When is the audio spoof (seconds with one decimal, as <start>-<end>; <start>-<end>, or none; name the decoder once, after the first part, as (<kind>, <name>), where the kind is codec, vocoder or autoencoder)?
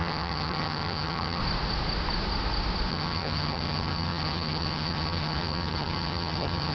0.0-1.4 (vocoder, HiFi-GAN); 2.9-6.7